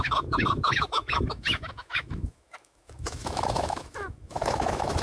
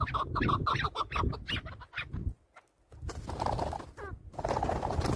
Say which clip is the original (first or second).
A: second